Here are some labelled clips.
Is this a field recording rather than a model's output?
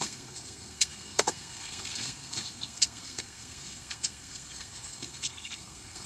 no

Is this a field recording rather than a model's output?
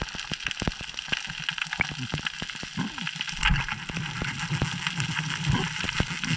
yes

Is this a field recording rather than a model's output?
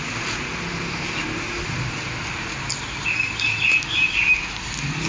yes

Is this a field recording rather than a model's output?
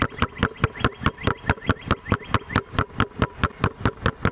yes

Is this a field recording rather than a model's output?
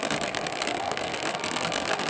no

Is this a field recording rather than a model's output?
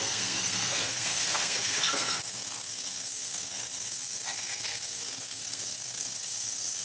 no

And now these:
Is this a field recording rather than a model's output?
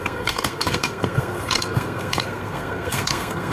no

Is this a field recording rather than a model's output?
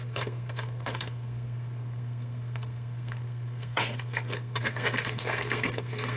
no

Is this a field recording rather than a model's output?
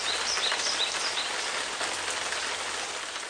yes